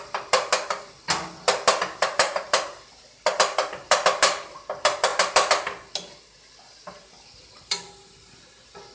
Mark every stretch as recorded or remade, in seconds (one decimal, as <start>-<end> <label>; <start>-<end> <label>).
0.0-8.9 recorded